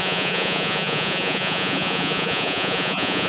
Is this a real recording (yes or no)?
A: no